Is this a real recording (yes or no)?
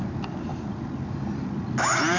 yes